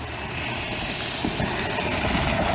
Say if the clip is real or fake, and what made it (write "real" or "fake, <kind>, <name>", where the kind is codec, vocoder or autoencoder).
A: real